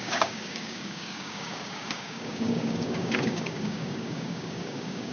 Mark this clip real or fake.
fake